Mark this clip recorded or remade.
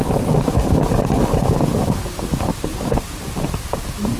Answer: recorded